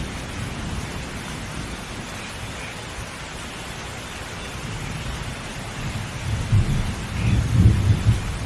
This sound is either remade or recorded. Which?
recorded